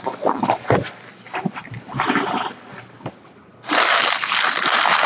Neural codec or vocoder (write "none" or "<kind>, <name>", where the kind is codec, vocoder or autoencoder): none